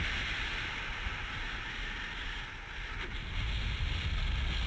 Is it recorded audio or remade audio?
recorded